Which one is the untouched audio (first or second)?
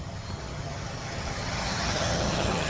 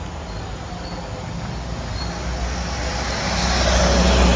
second